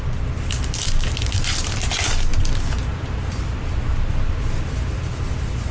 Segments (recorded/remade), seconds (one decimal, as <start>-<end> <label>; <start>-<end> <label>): 0.0-5.7 recorded